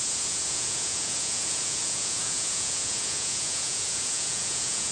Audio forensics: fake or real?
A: fake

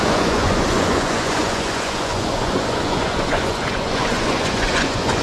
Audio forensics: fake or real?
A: fake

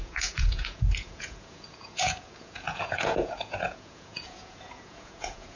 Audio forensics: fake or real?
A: fake